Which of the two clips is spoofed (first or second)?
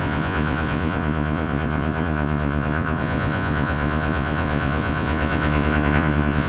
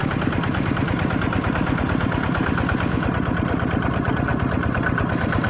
first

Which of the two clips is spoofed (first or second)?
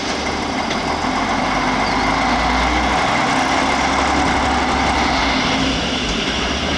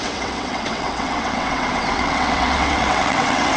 second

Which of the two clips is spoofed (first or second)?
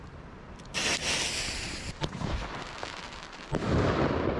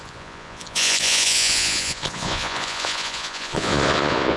second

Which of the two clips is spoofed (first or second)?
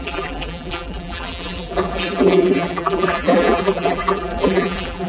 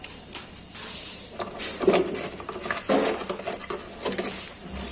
first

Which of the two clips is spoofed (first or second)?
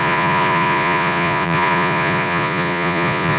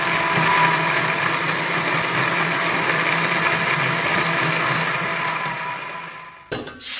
first